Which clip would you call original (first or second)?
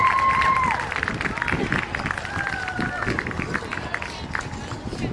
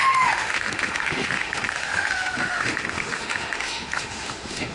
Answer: first